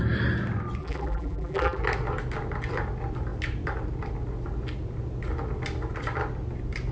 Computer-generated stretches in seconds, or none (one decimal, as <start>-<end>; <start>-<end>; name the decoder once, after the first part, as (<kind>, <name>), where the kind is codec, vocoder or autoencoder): 0.8-1.8 (vocoder, BigVGAN v2)